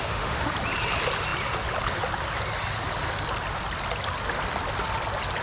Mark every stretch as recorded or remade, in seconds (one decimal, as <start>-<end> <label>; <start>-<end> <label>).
0.0-0.5 remade; 0.5-5.4 recorded